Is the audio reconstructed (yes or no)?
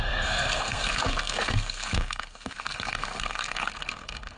yes